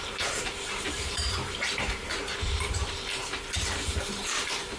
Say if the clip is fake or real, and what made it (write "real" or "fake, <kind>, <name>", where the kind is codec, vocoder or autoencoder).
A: fake, vocoder, BigVGAN v2